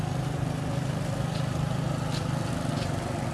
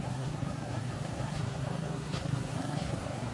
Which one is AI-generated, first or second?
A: second